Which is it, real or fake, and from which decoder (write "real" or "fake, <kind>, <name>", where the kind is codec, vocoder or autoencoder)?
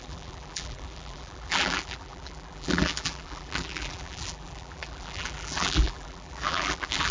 fake, vocoder, BigVGAN v2